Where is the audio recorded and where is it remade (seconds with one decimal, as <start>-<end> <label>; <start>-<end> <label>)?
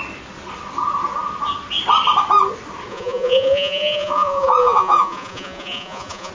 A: 0.0-2.9 recorded; 2.9-6.3 remade